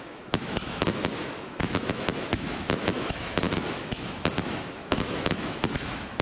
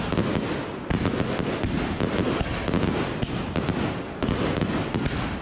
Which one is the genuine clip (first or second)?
second